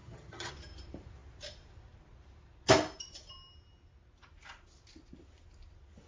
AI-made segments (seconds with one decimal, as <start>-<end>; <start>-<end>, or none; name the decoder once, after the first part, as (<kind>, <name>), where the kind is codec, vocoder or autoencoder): 0.0-0.5 (vocoder, HiFi-GAN)